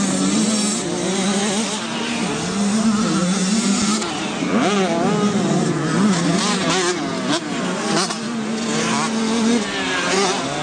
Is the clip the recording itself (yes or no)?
yes